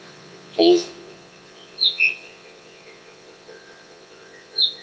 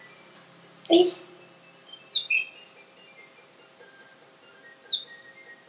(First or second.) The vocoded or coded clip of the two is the first